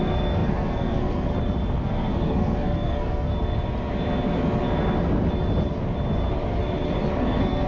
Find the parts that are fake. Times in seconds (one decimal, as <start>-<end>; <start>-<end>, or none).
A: 0.0-1.3; 1.8-3.3; 7.2-7.7